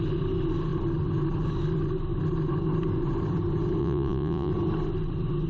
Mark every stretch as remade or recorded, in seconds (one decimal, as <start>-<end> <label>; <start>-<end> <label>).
0.0-3.8 recorded; 3.8-4.5 remade; 4.5-5.5 recorded

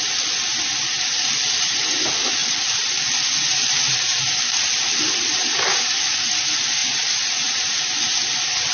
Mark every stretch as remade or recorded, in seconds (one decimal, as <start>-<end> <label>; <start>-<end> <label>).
0.0-6.8 recorded; 6.8-7.5 remade; 7.5-8.7 recorded